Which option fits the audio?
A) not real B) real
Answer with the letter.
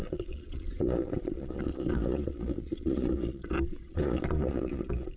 A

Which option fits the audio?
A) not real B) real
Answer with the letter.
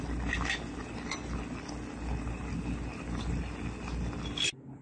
B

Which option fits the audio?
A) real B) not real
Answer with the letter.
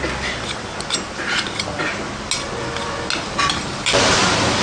A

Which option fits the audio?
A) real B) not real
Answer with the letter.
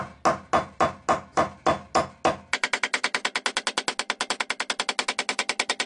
A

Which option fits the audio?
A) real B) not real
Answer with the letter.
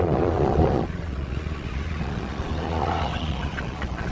B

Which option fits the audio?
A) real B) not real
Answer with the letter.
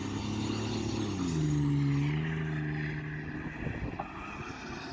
A